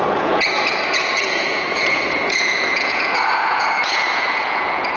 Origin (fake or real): fake